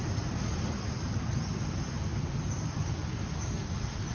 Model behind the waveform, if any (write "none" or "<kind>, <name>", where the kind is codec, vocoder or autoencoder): none